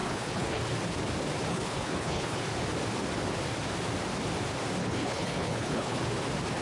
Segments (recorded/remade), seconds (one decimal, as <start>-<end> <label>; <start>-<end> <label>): 0.0-0.6 remade; 0.6-1.5 recorded; 1.5-2.4 remade; 2.4-4.8 recorded; 4.8-6.0 remade; 6.0-6.6 recorded

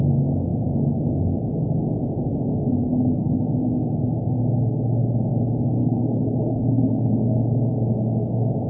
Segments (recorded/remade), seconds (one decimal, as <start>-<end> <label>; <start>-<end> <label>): 0.0-2.8 recorded; 2.8-3.4 remade; 3.4-5.8 recorded; 5.8-7.1 remade; 7.1-8.7 recorded

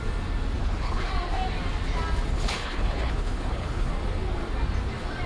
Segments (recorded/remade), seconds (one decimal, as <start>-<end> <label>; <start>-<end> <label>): 0.0-0.6 recorded; 0.6-1.1 remade; 1.1-2.3 recorded; 2.3-3.9 remade; 3.9-5.3 recorded

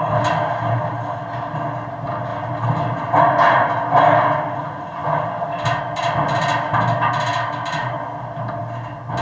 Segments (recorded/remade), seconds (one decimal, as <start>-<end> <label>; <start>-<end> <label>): 0.0-9.2 recorded

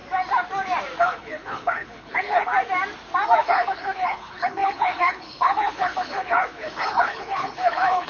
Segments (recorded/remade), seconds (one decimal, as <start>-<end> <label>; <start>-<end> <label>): 0.0-1.0 recorded; 1.0-2.5 remade; 2.5-3.4 recorded; 3.4-8.1 remade

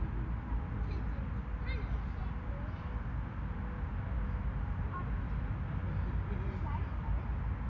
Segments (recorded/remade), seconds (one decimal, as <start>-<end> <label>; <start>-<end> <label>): 0.0-7.7 recorded

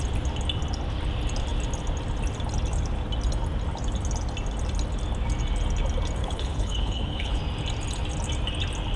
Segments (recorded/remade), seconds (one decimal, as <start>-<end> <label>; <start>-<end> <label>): 0.0-6.2 recorded; 6.2-7.4 remade; 7.4-9.0 recorded